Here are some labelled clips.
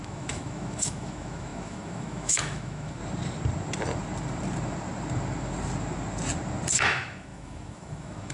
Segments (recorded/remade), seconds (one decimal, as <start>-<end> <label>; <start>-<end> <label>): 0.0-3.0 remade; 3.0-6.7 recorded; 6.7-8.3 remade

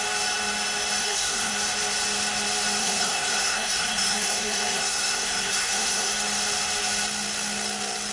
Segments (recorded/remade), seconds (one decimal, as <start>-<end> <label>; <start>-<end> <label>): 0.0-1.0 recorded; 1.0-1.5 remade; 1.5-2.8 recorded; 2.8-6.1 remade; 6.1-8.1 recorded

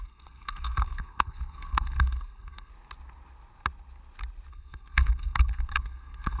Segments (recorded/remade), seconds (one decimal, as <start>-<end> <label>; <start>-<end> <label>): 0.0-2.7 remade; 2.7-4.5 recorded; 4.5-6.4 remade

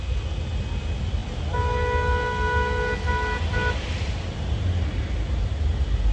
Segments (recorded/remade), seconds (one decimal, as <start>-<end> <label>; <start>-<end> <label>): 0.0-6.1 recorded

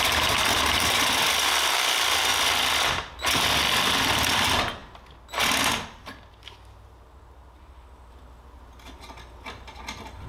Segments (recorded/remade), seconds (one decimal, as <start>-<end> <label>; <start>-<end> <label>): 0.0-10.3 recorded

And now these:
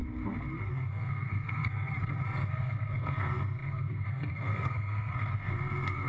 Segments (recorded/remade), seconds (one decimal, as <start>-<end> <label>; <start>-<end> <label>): 0.0-0.6 recorded; 0.6-1.9 remade; 1.9-2.5 recorded; 2.5-6.1 remade

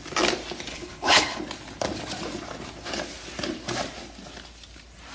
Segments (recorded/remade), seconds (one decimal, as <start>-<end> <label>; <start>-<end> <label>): 0.0-0.7 recorded; 0.7-1.4 remade; 1.4-5.1 recorded